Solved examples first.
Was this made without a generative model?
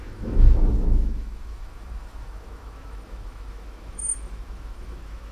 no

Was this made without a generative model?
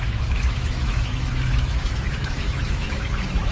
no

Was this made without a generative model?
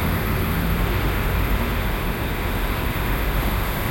no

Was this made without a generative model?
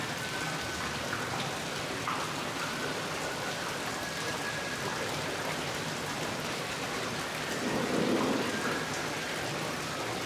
yes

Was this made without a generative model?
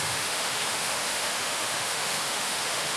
no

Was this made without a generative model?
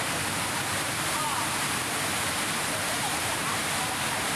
yes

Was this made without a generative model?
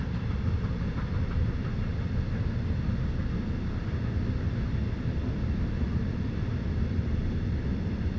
yes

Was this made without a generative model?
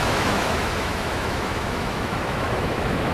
no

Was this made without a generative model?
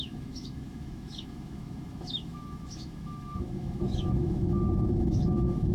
no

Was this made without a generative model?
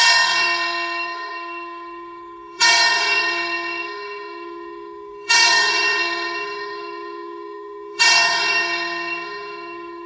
no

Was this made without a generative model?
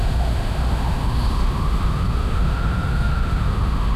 no